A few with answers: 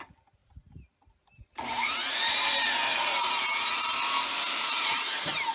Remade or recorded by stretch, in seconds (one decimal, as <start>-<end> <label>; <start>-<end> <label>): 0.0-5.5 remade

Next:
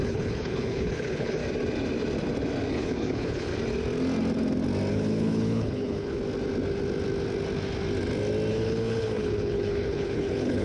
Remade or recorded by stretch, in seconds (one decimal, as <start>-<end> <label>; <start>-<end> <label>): 0.0-1.4 remade; 1.4-2.7 recorded; 2.7-3.5 remade; 3.5-4.9 recorded; 4.9-6.2 remade; 6.2-8.5 recorded; 8.5-10.6 remade

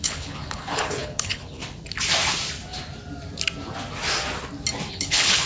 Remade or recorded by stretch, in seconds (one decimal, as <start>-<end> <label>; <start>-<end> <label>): 0.0-1.6 remade; 1.6-4.9 recorded; 4.9-5.5 remade